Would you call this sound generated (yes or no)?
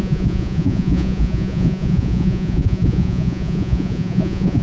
yes